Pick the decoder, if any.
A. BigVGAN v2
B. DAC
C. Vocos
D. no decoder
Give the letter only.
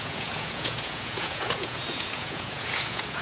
C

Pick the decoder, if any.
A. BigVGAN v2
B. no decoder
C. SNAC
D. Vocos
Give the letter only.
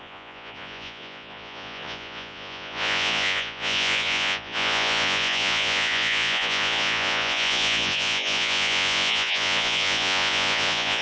D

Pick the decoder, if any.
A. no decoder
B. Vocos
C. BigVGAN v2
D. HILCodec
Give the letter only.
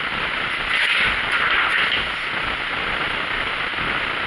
A